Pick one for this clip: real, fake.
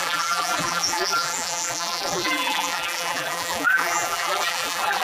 fake